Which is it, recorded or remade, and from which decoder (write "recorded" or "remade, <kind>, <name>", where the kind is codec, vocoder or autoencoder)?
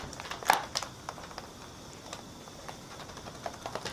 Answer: recorded